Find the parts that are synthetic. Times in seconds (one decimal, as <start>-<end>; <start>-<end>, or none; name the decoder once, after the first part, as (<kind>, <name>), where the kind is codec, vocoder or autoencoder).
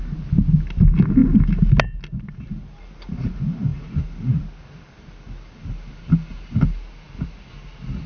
none